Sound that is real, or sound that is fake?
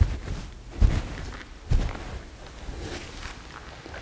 real